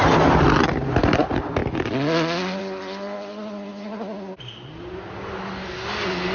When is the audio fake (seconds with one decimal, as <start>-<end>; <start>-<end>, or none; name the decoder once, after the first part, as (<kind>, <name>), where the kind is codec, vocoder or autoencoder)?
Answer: none